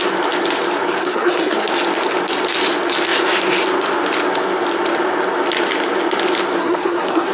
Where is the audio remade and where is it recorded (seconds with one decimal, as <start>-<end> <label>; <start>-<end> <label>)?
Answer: 0.0-1.0 recorded; 1.0-1.7 remade; 1.7-6.6 recorded; 6.6-7.3 remade

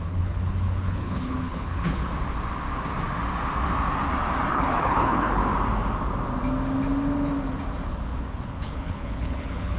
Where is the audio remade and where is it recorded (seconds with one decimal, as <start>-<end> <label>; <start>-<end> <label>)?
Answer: 0.0-2.1 remade; 2.1-4.5 recorded; 4.5-5.4 remade; 5.4-7.9 recorded; 7.9-9.8 remade

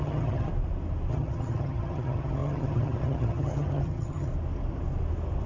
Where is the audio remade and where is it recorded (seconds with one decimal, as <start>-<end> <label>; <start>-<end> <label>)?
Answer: 0.0-0.5 remade; 0.5-1.1 recorded; 1.1-4.3 remade; 4.3-5.5 recorded

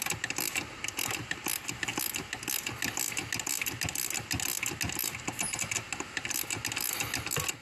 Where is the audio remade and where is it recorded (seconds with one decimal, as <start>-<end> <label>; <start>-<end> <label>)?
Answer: 0.0-7.6 recorded

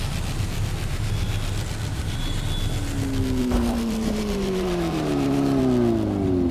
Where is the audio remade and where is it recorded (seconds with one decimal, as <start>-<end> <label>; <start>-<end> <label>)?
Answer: 0.0-1.9 recorded; 1.9-2.4 remade; 2.4-3.4 recorded; 3.4-5.6 remade; 5.6-6.5 recorded

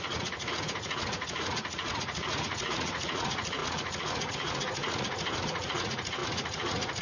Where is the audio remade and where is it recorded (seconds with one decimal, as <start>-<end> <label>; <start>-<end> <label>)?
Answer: 0.0-7.0 remade

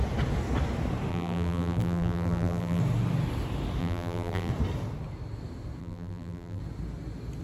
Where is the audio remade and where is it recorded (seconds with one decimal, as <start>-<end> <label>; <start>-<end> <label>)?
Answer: 0.0-1.1 recorded; 1.1-2.8 remade; 2.8-3.8 recorded; 3.8-4.5 remade; 4.5-5.8 recorded; 5.8-6.6 remade; 6.6-7.4 recorded

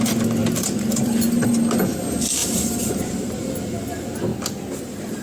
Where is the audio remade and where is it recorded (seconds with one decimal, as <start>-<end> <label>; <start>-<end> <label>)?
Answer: 0.0-0.4 recorded; 0.4-1.5 remade; 1.5-2.4 recorded; 2.4-3.5 remade; 3.5-5.2 recorded